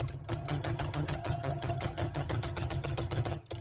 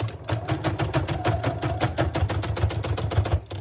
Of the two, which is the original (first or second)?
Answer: second